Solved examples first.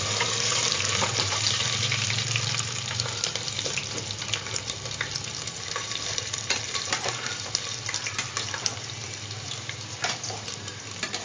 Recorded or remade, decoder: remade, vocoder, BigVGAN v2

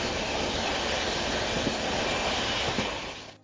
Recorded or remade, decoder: recorded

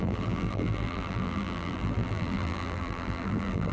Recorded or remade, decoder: remade, vocoder, BigVGAN v2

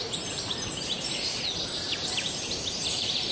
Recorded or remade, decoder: remade, vocoder, BigVGAN v2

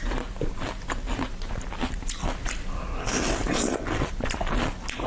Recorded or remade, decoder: recorded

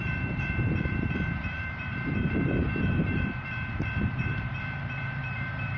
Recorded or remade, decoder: remade, vocoder, BigVGAN v2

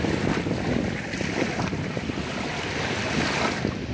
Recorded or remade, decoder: recorded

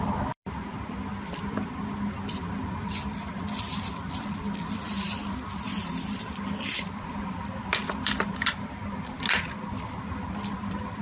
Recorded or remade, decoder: remade, vocoder, BigVGAN v2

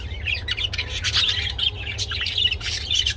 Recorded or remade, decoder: remade, vocoder, BigVGAN v2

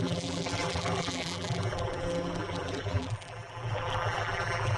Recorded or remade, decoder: remade, vocoder, BigVGAN v2